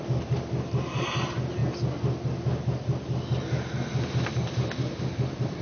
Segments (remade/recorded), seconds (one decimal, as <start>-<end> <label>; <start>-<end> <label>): 0.0-1.6 remade; 1.6-5.0 recorded; 5.0-5.6 remade